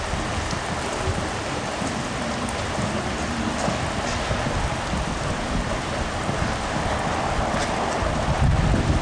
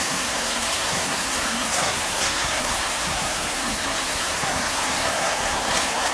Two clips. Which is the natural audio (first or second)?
first